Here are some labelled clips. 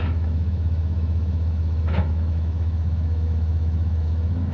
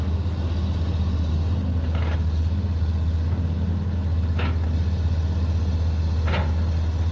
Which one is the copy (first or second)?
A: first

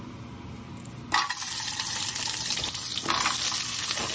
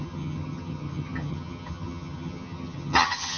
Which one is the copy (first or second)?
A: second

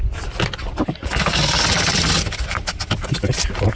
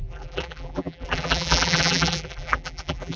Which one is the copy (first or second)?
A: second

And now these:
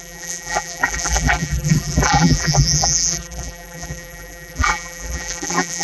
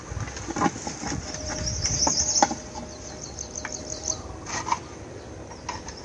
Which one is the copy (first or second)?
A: first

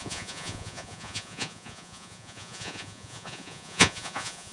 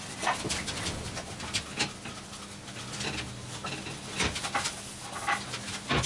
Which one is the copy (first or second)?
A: first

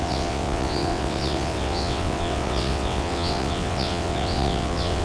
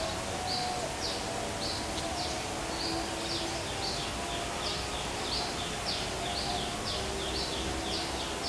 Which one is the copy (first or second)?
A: first